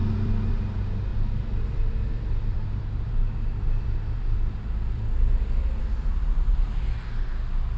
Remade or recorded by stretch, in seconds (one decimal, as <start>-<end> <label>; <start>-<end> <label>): 0.0-0.6 remade; 0.6-1.1 recorded; 1.1-5.8 remade; 5.8-6.5 recorded; 6.5-7.3 remade; 7.3-7.8 recorded